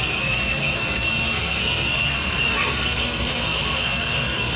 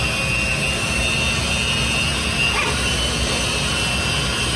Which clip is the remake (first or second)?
first